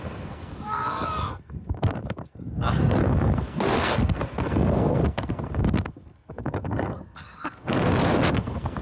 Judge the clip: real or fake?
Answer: fake